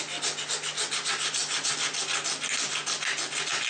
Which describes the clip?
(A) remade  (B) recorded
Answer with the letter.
B